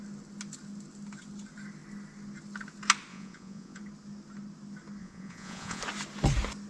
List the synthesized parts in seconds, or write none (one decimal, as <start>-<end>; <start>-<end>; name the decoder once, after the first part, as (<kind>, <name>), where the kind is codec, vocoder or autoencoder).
3.1-3.8 (vocoder, Vocos); 5.0-5.8